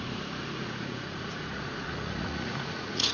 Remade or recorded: remade